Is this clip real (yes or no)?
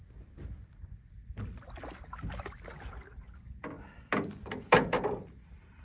yes